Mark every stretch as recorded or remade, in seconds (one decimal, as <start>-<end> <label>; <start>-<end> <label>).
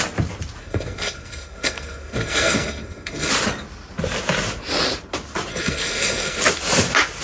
0.0-0.6 recorded; 0.6-3.3 remade; 3.3-5.5 recorded; 5.5-6.4 remade; 6.4-7.2 recorded